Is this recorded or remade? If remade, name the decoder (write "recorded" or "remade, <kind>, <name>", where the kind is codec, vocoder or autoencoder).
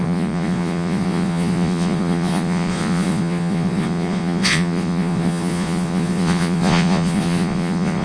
remade, vocoder, Vocos